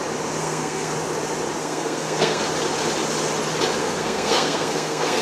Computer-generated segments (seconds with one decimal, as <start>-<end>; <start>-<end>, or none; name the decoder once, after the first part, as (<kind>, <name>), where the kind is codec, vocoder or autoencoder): 0.4-0.9 (codec, SNAC); 1.6-2.4; 3.8-5.2